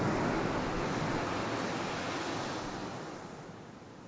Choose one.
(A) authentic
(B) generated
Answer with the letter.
A